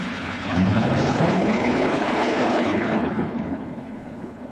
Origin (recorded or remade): remade